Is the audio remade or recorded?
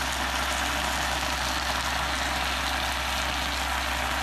recorded